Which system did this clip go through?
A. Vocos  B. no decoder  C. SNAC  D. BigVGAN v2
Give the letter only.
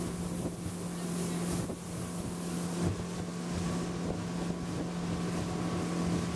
B